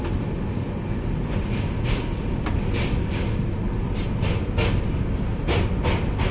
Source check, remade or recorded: recorded